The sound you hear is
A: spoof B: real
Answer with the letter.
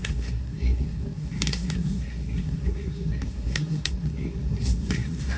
A